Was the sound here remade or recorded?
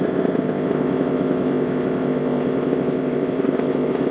remade